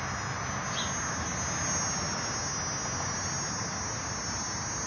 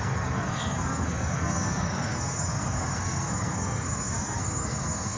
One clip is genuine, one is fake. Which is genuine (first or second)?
first